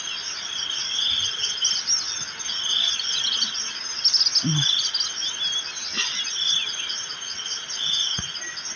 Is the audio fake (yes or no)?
no